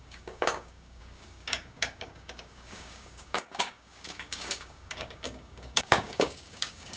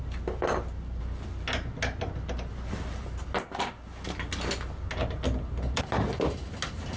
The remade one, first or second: first